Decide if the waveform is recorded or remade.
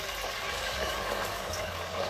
remade